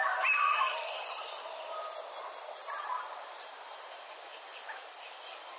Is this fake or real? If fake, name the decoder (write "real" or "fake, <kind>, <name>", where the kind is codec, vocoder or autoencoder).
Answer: real